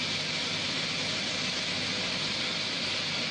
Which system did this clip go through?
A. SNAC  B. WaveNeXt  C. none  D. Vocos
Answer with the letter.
C